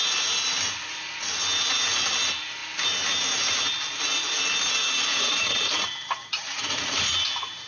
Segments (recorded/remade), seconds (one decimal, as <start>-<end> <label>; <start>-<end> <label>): 0.0-5.1 recorded; 5.1-7.7 remade